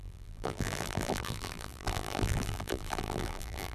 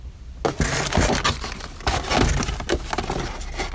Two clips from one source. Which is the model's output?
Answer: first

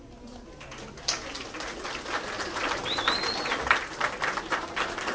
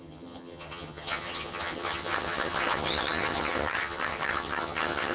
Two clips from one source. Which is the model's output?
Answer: second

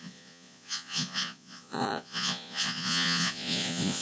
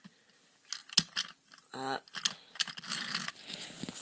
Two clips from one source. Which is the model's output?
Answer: first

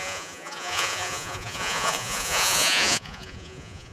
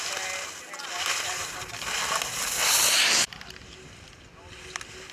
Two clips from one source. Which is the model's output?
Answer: first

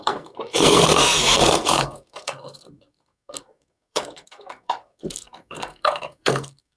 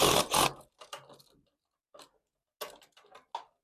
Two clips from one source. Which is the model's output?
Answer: first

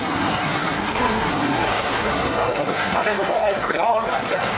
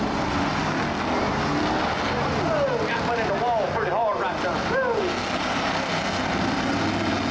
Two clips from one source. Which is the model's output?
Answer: first